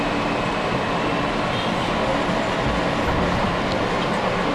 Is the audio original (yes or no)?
yes